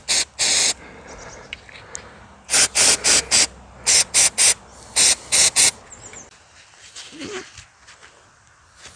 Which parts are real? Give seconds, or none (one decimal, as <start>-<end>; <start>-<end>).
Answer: 0.0-9.0